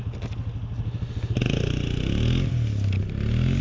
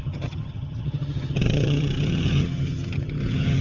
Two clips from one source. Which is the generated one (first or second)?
second